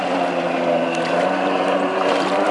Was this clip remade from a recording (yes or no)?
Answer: yes